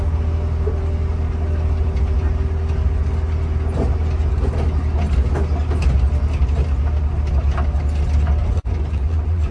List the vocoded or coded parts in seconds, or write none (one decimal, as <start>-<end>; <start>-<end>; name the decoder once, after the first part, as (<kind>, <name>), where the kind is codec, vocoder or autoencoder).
8.4-9.5 (vocoder, Vocos)

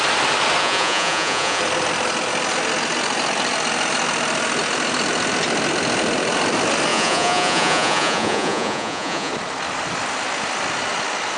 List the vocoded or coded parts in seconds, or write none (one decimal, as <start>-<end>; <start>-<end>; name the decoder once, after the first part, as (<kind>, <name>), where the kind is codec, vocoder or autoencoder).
0.6-1.6 (vocoder, Vocos); 6.9-9.3

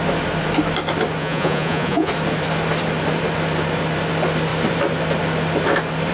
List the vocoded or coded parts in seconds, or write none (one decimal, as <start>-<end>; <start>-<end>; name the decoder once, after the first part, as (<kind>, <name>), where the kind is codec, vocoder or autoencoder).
1.2-2.1 (vocoder, Vocos)

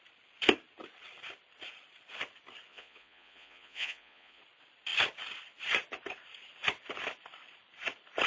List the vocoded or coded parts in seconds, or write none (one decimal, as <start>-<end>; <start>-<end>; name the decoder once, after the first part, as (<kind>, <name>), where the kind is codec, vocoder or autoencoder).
2.7-4.4 (vocoder, Vocos)

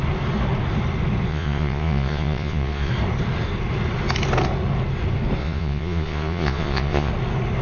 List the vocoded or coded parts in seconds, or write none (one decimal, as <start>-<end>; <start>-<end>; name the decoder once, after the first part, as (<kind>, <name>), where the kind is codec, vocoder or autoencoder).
1.3-2.9 (vocoder, Vocos); 5.4-7.1

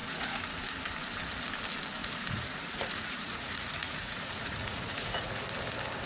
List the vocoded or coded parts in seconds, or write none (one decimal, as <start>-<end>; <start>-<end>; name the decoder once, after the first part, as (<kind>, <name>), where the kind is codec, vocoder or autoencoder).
0.0-0.6 (vocoder, Vocos); 2.0-5.5